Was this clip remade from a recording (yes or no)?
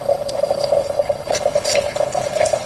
yes